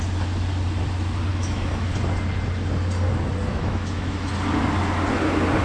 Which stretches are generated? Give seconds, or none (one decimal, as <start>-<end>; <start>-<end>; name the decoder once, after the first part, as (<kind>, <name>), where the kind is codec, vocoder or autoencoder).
1.3-1.9 (autoencoder, DAC-VAE); 3.5-4.3